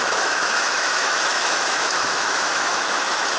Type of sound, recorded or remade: remade